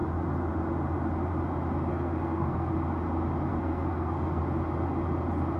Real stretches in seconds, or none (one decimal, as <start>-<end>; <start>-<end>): 0.0-1.9; 2.7-3.5; 4.4-5.6